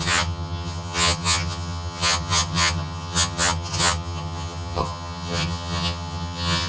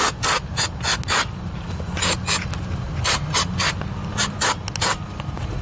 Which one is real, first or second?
second